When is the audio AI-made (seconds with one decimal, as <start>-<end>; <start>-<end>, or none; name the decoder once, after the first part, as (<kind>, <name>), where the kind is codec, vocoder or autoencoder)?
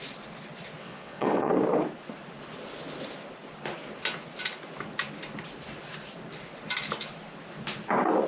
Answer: 0.8-1.5 (vocoder, WaveNeXt)